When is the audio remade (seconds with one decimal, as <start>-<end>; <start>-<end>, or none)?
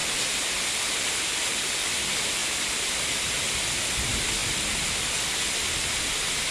none